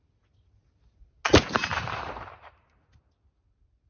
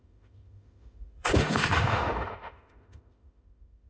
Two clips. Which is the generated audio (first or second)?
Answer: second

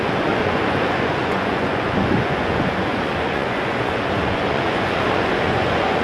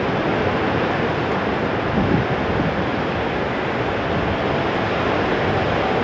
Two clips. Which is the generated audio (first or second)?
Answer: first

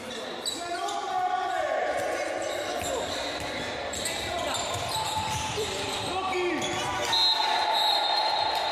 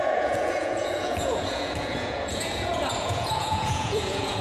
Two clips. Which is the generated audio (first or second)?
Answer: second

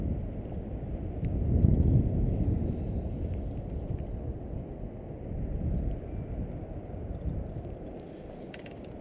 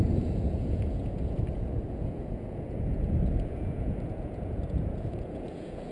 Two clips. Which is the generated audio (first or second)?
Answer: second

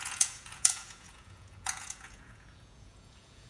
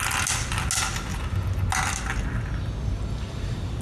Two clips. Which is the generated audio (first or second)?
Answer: first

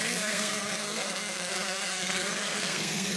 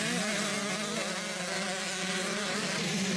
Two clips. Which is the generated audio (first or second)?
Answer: first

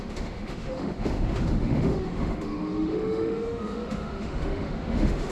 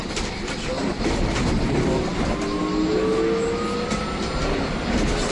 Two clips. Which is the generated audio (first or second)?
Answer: first